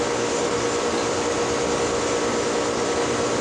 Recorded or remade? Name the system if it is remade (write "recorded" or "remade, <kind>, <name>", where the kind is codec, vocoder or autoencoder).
recorded